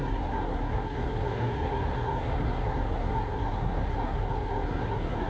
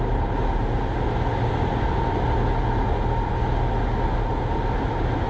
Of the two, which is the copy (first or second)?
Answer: first